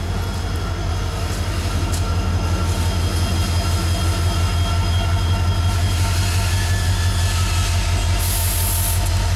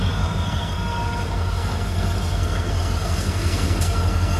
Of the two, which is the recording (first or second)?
first